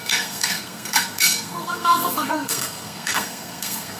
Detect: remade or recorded remade